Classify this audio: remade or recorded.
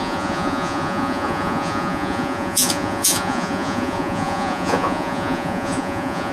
remade